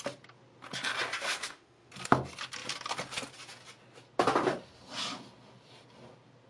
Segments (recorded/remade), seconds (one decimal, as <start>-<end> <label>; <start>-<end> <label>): 0.0-1.2 recorded; 1.2-1.9 remade; 1.9-6.5 recorded